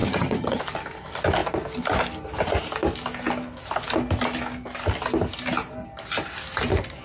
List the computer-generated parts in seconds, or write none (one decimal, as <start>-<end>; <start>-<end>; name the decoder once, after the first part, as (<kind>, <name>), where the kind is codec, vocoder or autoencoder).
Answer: 0.0-0.6 (vocoder, HiFi-GAN)